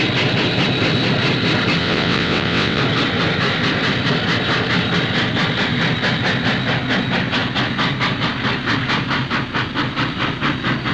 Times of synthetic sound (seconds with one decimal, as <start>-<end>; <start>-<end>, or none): 1.8-2.8